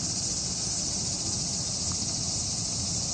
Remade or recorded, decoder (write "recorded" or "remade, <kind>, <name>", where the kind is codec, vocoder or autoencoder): recorded